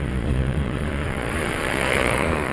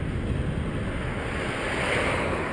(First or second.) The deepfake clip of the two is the first